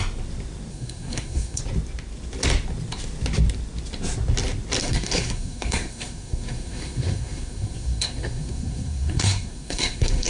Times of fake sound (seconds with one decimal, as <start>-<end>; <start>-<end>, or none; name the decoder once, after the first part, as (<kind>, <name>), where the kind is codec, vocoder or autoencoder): 0.7-1.6 (codec, SNAC); 4.8-10.3

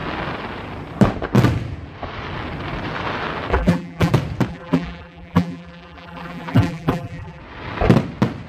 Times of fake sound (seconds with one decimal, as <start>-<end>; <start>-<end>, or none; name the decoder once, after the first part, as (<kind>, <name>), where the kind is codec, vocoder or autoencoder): 3.5-4.1 (vocoder, BigVGAN v2); 4.5-7.4